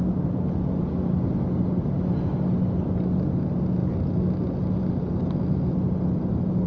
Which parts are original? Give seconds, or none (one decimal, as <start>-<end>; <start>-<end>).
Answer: 0.0-6.7